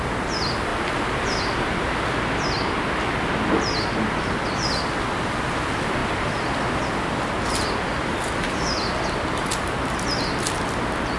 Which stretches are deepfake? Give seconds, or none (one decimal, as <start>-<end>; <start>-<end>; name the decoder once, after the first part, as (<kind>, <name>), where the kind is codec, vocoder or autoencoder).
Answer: none